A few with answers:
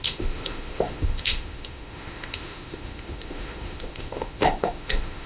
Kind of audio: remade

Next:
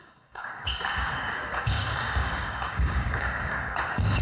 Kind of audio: remade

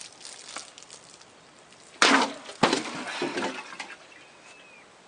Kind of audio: recorded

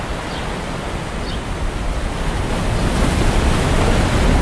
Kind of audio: recorded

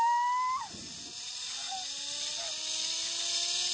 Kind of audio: recorded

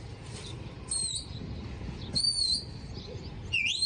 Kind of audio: recorded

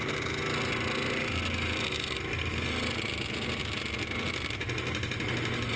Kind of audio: recorded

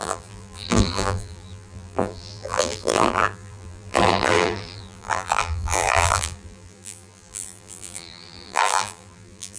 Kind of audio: remade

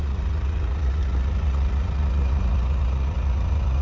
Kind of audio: remade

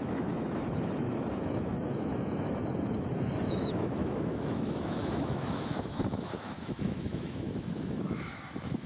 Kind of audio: remade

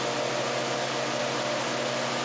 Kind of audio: recorded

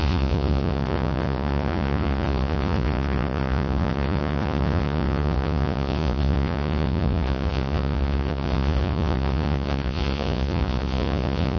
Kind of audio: remade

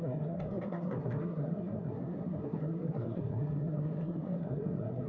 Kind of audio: remade